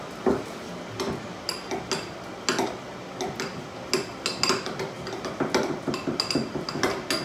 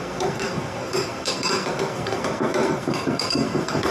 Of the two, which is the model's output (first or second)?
second